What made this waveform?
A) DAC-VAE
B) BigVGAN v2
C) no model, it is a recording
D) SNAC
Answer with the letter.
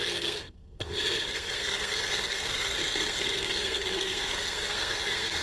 D